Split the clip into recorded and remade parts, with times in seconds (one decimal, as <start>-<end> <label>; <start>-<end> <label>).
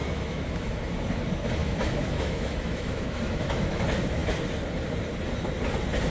0.0-0.8 remade; 0.8-1.6 recorded; 1.6-3.8 remade; 3.8-6.1 recorded